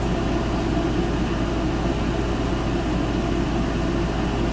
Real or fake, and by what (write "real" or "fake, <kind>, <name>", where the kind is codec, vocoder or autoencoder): real